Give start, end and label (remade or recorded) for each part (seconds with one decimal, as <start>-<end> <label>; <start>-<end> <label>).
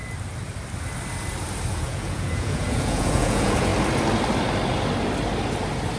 0.0-1.7 recorded; 1.7-3.7 remade; 3.7-6.0 recorded